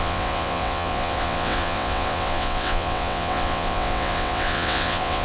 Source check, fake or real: fake